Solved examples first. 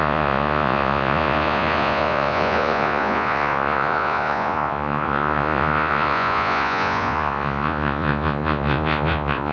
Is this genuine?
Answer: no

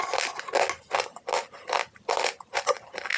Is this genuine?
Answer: yes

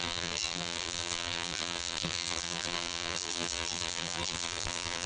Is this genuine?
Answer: no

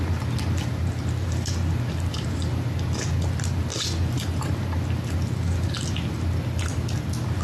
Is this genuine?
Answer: yes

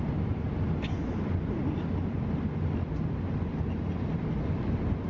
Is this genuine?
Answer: yes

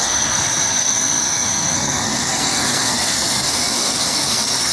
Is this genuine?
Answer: no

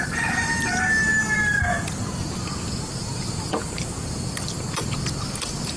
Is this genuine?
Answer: yes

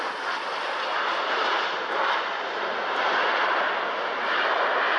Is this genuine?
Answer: yes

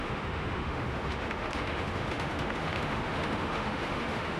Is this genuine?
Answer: no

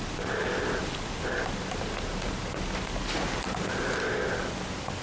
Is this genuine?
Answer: yes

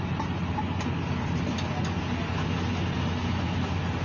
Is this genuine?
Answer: yes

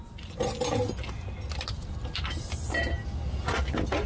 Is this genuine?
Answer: yes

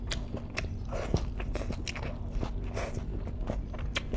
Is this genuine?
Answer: yes